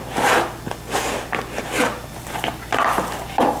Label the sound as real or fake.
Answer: real